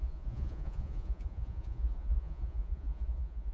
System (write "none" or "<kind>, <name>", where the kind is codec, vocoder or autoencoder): vocoder, Vocos